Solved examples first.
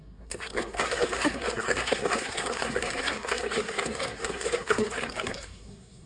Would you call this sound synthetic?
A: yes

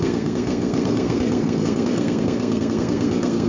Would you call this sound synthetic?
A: yes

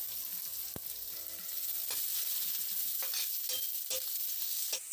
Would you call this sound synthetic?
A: no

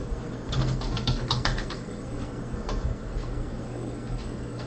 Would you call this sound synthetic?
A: yes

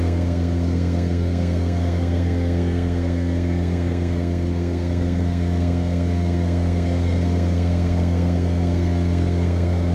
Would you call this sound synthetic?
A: yes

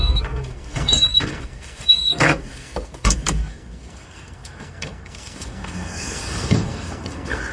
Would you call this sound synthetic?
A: yes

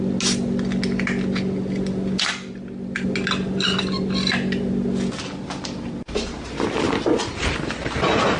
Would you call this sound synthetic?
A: no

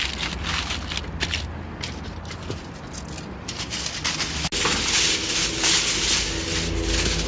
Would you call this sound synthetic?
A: no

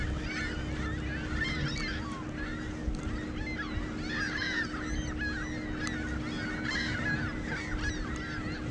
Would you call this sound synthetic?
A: no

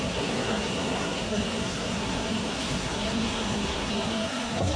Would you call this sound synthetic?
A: yes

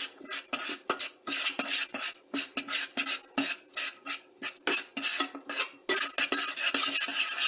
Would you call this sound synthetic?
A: no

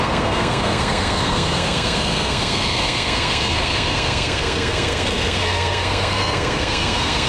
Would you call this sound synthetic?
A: yes